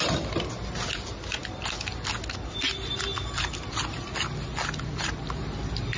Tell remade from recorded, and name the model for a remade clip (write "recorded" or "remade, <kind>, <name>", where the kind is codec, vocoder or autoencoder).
recorded